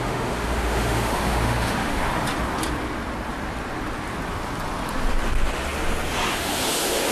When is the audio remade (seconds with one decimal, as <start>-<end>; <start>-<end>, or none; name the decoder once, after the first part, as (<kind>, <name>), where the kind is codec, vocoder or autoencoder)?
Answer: 0.0-2.0 (autoencoder, DAC-VAE); 6.3-7.1